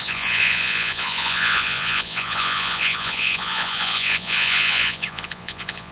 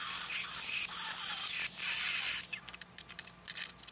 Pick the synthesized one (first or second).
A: first